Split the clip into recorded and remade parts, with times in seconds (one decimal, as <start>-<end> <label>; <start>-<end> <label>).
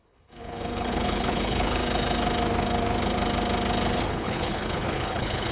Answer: 0.0-1.8 remade; 1.8-4.1 recorded; 4.1-5.5 remade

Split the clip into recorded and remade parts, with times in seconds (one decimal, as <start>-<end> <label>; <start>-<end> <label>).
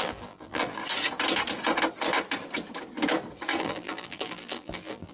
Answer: 0.0-0.8 remade; 0.8-3.6 recorded; 3.6-5.1 remade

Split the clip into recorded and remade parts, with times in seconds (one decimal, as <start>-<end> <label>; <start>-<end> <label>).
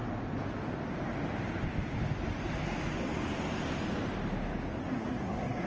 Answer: 0.0-4.8 recorded; 4.8-5.7 remade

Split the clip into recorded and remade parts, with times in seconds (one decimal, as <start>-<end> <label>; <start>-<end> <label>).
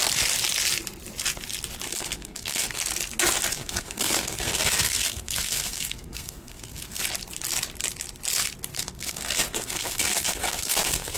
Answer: 0.0-1.9 recorded; 1.9-2.8 remade; 2.8-3.5 recorded; 3.5-7.0 remade; 7.0-8.7 recorded; 8.7-11.2 remade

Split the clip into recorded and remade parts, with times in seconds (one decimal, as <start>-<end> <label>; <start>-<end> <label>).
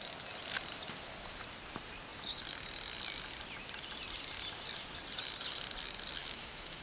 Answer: 0.0-6.2 recorded; 6.2-6.8 remade